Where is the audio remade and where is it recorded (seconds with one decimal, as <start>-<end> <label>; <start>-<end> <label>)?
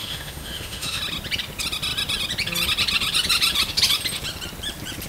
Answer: 0.0-1.0 remade; 1.0-5.1 recorded